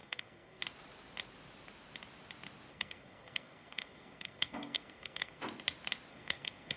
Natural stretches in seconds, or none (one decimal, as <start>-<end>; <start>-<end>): 0.6-2.7; 5.4-6.1